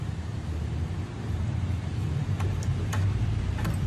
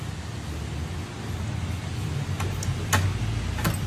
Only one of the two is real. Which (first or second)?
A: second